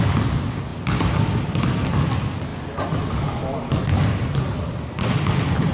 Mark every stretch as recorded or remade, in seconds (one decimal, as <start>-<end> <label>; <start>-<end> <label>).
0.0-5.7 recorded